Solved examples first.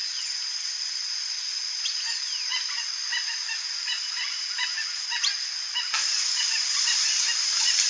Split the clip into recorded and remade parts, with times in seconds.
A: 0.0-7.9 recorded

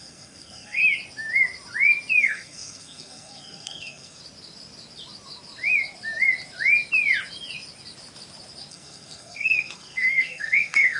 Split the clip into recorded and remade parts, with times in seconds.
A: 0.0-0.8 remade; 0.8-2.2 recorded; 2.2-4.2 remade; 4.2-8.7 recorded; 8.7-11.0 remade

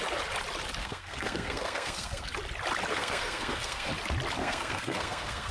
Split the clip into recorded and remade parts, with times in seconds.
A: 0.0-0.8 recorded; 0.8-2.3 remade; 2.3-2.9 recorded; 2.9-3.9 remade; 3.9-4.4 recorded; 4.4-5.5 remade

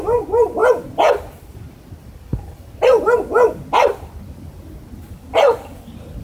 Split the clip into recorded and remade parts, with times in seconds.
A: 0.0-0.6 recorded; 0.6-1.6 remade; 1.6-6.2 recorded

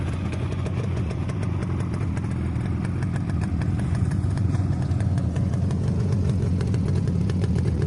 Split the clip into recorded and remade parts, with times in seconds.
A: 0.0-1.6 remade; 1.6-3.8 recorded; 3.8-7.9 remade

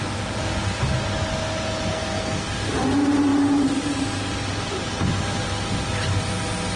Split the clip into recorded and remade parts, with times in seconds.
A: 0.0-1.9 recorded; 1.9-2.5 remade; 2.5-6.8 recorded

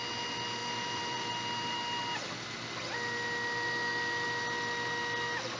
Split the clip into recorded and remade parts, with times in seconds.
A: 0.0-0.6 recorded; 0.6-1.3 remade; 1.3-5.6 recorded

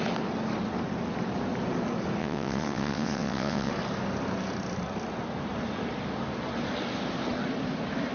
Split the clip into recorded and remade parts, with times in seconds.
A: 0.0-2.2 recorded; 2.2-3.7 remade; 3.7-8.1 recorded